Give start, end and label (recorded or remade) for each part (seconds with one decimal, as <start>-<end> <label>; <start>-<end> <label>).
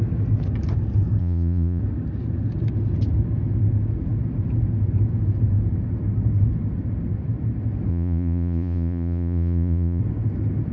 0.0-1.2 recorded; 1.2-1.8 remade; 1.8-7.9 recorded; 7.9-10.0 remade; 10.0-10.7 recorded